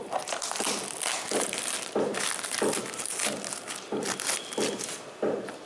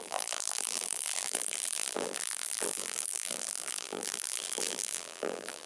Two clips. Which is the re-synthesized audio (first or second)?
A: second